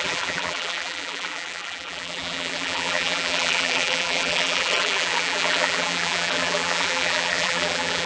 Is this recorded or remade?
remade